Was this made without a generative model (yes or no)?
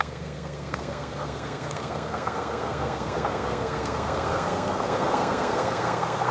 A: no